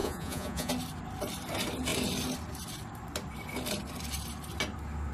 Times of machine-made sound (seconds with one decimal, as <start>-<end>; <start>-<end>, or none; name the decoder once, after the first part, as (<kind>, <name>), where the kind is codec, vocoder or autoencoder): 0.0-0.7 (vocoder, Vocos)